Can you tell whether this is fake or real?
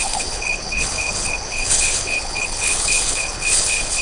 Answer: fake